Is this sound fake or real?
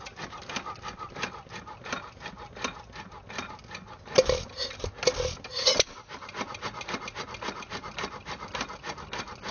real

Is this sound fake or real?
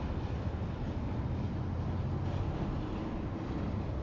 real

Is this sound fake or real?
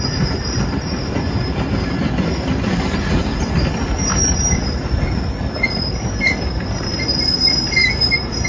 real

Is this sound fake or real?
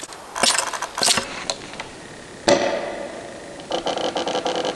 real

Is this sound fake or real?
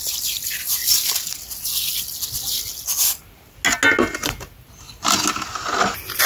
real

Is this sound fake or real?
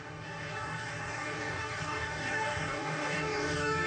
fake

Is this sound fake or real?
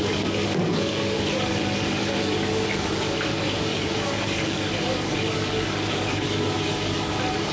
fake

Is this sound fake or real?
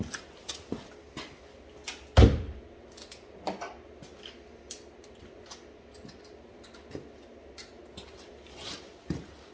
real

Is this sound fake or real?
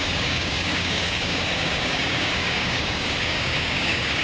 fake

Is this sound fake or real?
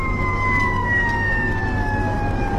fake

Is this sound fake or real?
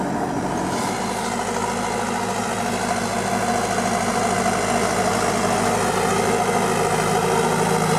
real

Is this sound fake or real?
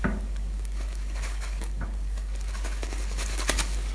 fake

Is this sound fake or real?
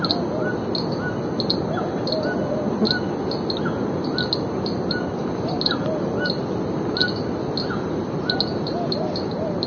real